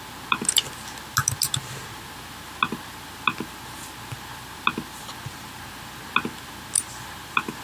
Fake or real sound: real